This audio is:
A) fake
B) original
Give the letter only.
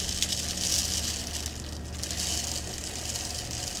B